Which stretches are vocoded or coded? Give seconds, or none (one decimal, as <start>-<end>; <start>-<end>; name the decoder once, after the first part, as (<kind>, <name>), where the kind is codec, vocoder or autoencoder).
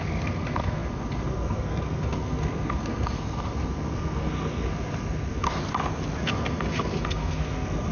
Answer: 0.0-5.6 (codec, SNAC); 6.2-7.9